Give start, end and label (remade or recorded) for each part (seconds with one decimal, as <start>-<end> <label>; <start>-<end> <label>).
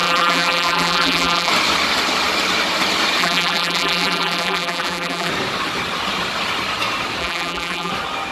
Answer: 0.0-1.5 remade; 1.5-3.2 recorded; 3.2-5.3 remade; 5.3-7.2 recorded; 7.2-7.9 remade; 7.9-8.3 recorded